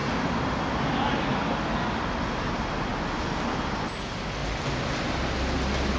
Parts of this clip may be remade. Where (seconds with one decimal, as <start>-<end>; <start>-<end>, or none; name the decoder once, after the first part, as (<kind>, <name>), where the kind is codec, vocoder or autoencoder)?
none